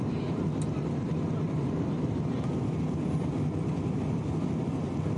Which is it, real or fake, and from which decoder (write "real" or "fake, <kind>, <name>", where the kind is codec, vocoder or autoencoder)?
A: real